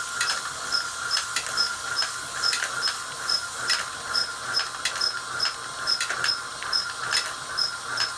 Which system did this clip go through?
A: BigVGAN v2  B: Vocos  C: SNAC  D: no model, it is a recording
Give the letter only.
D